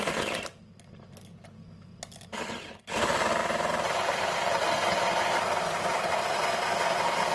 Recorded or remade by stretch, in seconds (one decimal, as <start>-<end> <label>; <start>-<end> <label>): 0.0-7.3 recorded